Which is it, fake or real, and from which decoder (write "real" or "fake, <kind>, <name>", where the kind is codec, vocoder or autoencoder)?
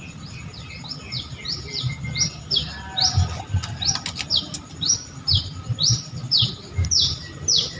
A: real